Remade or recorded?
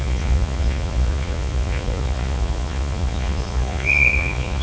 remade